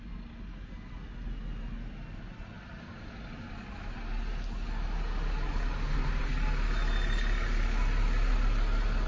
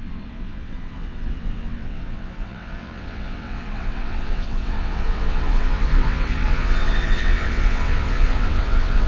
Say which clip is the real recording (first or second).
first